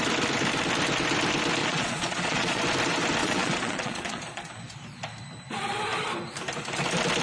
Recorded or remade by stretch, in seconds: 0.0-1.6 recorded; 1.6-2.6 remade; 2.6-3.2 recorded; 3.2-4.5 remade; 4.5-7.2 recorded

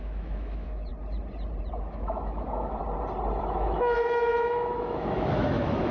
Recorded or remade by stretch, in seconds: 0.0-0.9 remade; 0.9-1.7 recorded; 1.7-2.8 remade; 2.8-3.4 recorded; 3.4-5.9 remade